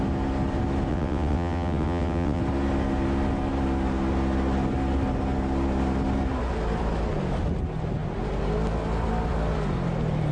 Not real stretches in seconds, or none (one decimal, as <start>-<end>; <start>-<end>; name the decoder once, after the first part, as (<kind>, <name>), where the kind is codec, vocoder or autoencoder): 0.9-2.4 (vocoder, WaveNeXt)